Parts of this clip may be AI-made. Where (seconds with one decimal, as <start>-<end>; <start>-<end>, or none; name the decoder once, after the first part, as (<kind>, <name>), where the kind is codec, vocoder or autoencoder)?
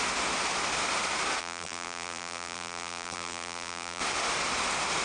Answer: 1.4-4.0 (vocoder, BigVGAN v2)